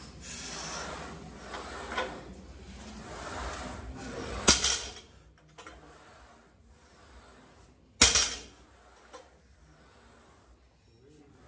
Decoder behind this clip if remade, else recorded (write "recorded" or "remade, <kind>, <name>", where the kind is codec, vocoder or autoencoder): recorded